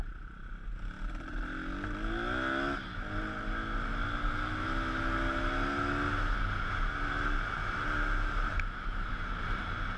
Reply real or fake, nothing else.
real